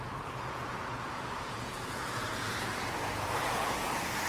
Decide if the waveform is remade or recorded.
remade